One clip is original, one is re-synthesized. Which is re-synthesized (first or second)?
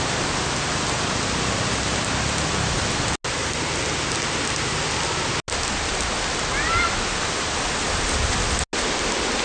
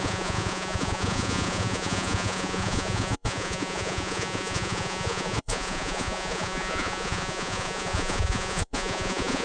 second